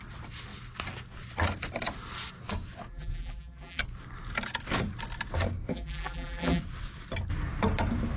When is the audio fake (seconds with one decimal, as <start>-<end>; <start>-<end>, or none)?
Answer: 2.9-3.8; 5.7-6.6